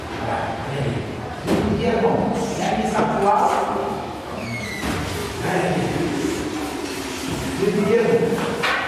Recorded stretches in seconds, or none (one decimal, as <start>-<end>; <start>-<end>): 0.0-3.8; 4.7-5.2; 6.4-8.9